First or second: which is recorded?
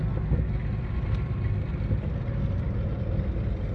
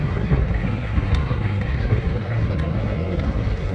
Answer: first